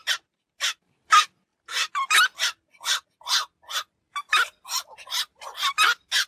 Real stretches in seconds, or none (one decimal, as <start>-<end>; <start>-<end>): 0.0-6.3

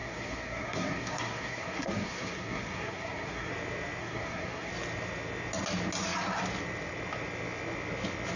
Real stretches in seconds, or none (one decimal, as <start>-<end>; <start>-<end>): 3.5-4.0; 4.7-8.4

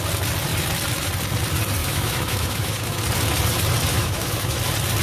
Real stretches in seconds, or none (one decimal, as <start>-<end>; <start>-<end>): 0.0-1.8; 3.0-3.9; 4.6-5.0

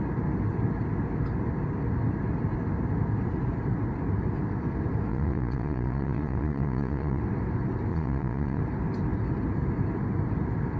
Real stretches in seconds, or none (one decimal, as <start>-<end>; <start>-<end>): 0.0-5.1; 7.2-7.9; 8.6-10.8

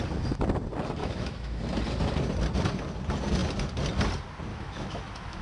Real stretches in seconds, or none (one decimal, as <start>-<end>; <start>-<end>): 0.0-1.0; 1.6-4.5

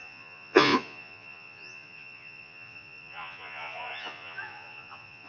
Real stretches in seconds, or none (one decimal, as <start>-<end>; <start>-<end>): none

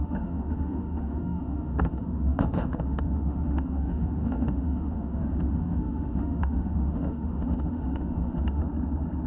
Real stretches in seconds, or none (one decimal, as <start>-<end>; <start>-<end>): 8.6-9.3